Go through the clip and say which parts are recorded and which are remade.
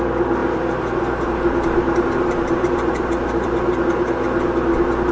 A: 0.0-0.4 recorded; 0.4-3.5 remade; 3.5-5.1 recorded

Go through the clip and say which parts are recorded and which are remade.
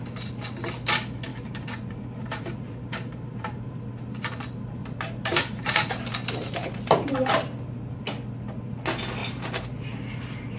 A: 0.0-1.3 recorded; 1.3-3.8 remade; 3.8-4.8 recorded; 4.8-8.0 remade; 8.0-9.2 recorded; 9.2-10.6 remade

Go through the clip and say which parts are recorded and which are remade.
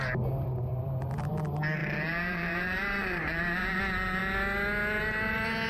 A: 0.0-0.7 recorded; 0.7-1.3 remade; 1.3-1.8 recorded; 1.8-3.8 remade; 3.8-5.7 recorded